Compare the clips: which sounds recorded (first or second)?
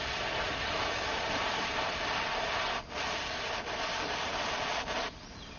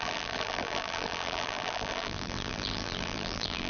first